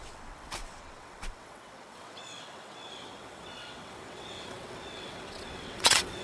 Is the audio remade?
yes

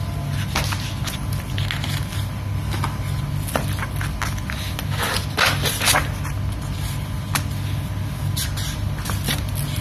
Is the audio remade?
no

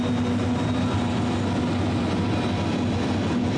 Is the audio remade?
no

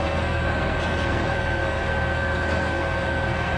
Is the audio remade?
yes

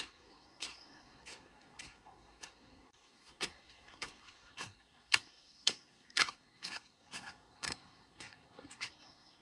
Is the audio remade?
yes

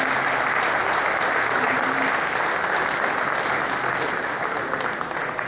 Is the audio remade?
no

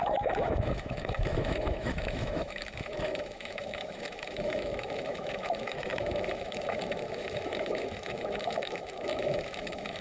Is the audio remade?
yes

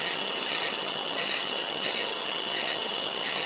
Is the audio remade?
yes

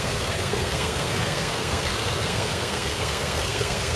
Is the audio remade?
yes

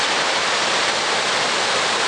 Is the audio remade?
no